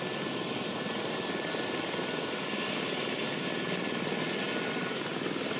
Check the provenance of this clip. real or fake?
real